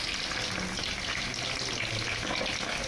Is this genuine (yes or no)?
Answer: yes